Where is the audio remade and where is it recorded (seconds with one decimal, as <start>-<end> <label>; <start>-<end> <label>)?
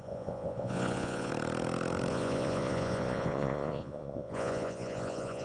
0.0-1.3 remade; 1.3-2.1 recorded; 2.1-5.4 remade